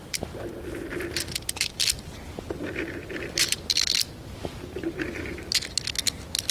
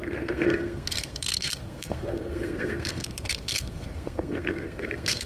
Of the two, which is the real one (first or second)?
first